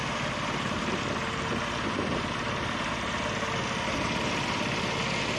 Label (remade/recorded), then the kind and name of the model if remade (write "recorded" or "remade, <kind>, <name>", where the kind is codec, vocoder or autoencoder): recorded